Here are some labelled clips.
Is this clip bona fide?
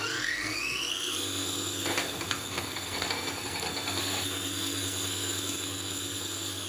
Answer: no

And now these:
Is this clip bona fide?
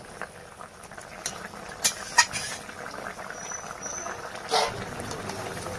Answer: yes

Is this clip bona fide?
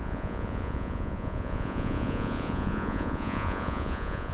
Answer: no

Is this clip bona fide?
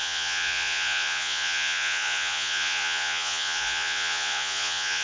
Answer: no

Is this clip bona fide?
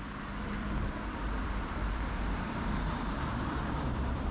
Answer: no